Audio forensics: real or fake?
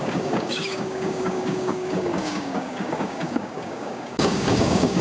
fake